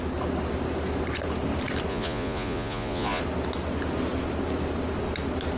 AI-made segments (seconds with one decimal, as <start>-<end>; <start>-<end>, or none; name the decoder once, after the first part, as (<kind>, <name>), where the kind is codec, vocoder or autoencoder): 1.9-3.2 (vocoder, Vocos)